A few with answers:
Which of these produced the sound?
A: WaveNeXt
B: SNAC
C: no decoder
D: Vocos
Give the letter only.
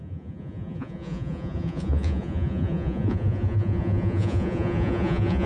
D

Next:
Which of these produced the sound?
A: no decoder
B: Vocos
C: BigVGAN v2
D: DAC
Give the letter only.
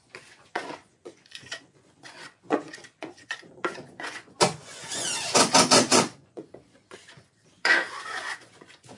B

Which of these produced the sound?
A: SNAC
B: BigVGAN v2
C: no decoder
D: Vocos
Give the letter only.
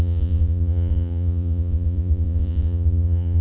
D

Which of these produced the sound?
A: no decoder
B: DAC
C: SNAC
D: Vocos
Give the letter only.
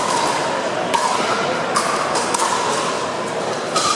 A